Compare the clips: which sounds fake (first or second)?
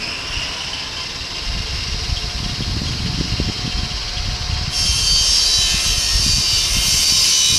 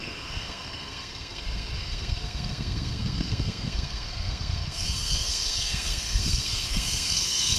second